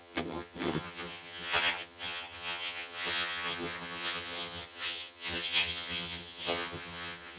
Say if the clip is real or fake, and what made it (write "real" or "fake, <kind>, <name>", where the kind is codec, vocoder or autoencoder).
fake, vocoder, HiFi-GAN